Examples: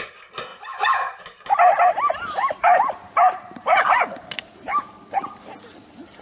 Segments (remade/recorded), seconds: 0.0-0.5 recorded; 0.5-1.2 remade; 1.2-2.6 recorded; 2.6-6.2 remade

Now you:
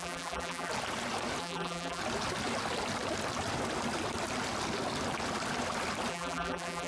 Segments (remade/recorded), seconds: 0.0-0.7 remade; 0.7-1.4 recorded; 1.4-2.0 remade; 2.0-6.1 recorded; 6.1-6.9 remade